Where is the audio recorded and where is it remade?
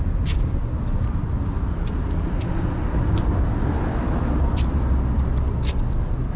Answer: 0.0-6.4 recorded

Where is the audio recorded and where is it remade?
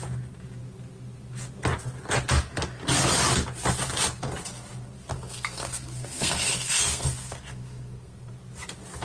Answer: 0.0-5.1 recorded; 5.1-8.3 remade; 8.3-9.0 recorded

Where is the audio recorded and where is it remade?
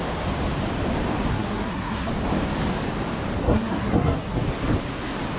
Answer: 0.0-1.3 recorded; 1.3-2.1 remade; 2.1-3.4 recorded; 3.4-4.4 remade; 4.4-5.4 recorded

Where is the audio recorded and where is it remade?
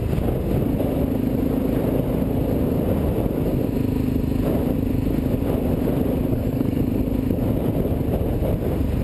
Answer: 0.0-6.3 recorded; 6.3-6.8 remade; 6.8-9.0 recorded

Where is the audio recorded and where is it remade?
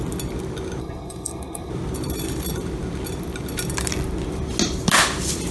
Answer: 0.0-0.8 recorded; 0.8-1.7 remade; 1.7-5.5 recorded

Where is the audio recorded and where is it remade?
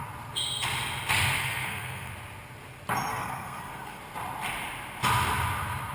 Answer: 0.0-1.4 recorded; 1.4-2.1 remade; 2.1-3.1 recorded; 3.1-4.0 remade; 4.0-5.9 recorded